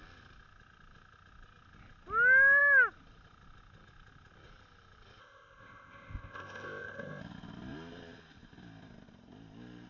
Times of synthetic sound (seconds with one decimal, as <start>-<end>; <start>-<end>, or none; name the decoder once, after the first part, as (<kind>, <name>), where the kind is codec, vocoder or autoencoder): 5.2-7.2 (codec, ZipCodec)